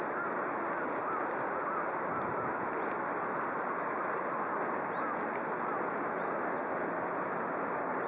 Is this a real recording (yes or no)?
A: yes